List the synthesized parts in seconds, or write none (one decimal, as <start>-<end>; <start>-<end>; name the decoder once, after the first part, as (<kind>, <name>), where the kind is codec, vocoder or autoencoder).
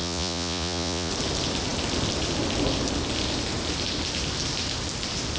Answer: 0.0-1.1 (vocoder, Vocos)